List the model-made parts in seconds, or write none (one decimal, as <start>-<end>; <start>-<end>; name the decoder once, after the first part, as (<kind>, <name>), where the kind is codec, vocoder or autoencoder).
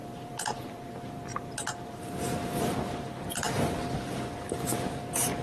0.0-5.4 (vocoder, BigVGAN v2)